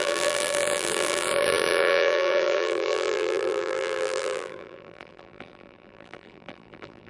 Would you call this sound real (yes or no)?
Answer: no